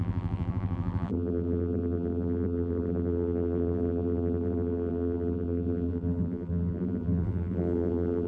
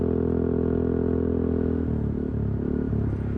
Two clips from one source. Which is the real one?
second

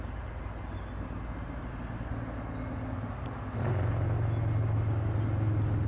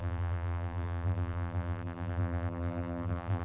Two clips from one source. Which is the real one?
first